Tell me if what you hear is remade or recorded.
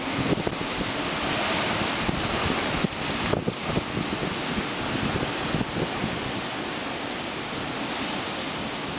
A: recorded